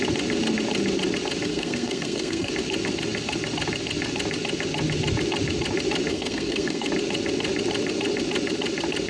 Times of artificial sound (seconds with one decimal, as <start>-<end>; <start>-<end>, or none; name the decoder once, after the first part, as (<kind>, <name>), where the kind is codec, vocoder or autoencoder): 1.5-2.5 (codec, SNAC); 6.1-6.9

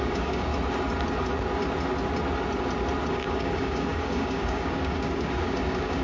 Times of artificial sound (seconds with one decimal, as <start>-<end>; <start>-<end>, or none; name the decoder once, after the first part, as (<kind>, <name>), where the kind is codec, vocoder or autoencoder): 0.0-0.5 (codec, DAC); 3.1-6.0

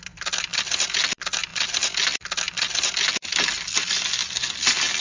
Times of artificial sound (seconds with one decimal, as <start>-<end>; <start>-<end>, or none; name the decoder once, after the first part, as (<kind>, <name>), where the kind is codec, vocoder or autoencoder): none

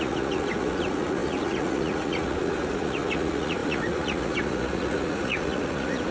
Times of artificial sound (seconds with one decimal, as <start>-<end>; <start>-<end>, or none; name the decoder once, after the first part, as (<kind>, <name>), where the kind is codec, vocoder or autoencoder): 0.0-6.1 (vocoder, Vocos)

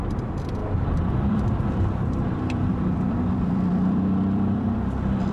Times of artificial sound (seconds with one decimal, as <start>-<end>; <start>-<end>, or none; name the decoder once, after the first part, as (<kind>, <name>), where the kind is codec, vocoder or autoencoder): 0.0-5.3 (vocoder, BigVGAN v2)

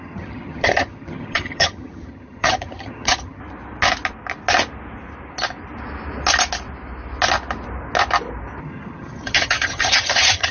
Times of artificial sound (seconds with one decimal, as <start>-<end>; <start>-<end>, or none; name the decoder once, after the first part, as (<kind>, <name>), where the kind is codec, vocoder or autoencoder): 0.0-3.4 (vocoder, HiFi-GAN); 8.6-10.5